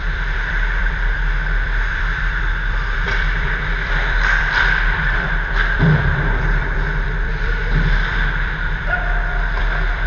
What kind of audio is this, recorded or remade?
remade